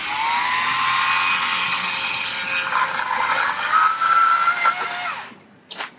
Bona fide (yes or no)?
yes